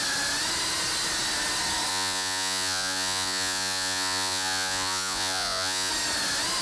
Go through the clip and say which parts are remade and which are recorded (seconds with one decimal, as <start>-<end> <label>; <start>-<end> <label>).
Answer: 0.0-1.9 recorded; 1.9-5.9 remade; 5.9-6.6 recorded